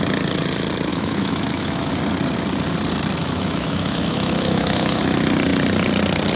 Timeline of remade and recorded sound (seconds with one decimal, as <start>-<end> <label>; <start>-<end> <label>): 0.0-0.9 recorded; 0.9-1.9 remade; 1.9-3.2 recorded; 3.2-5.0 remade; 5.0-6.4 recorded